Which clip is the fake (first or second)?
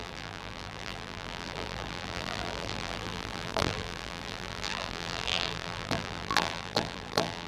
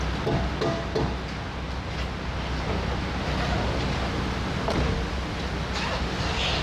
first